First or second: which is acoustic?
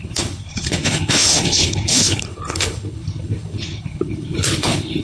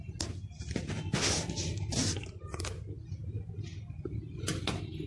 second